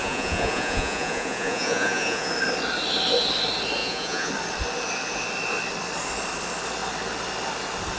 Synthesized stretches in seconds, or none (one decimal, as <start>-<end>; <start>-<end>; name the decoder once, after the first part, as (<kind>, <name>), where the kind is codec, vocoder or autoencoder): 0.0-2.3 (vocoder, Vocos); 3.8-4.3